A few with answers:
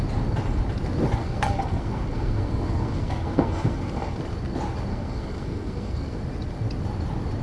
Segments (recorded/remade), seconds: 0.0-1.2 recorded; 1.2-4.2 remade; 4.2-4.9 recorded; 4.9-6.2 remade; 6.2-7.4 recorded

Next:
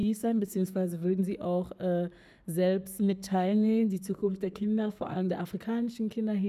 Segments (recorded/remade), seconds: 0.0-1.2 remade; 1.2-2.8 recorded; 2.8-5.3 remade; 5.3-6.5 recorded

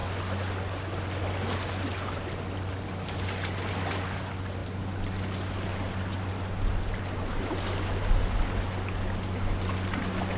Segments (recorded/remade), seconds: 0.0-10.4 recorded